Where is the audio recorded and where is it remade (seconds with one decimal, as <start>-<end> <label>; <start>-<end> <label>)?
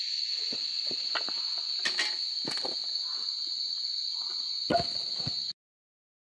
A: 0.0-6.3 recorded